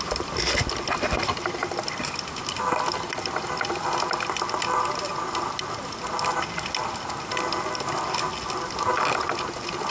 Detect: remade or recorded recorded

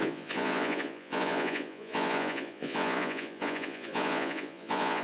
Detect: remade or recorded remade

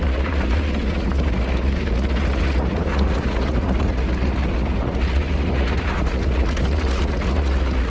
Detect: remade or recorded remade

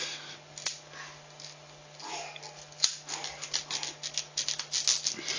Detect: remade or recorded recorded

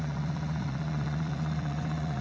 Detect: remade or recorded remade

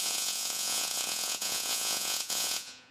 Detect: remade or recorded remade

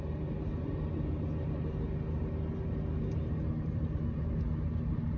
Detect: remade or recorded recorded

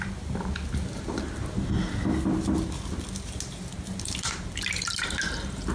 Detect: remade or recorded recorded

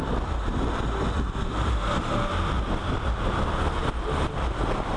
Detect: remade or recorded recorded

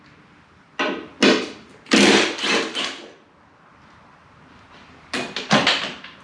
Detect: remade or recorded recorded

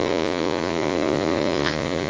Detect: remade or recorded remade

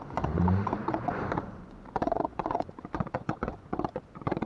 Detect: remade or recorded remade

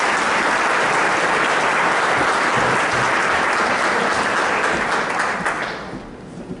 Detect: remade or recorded recorded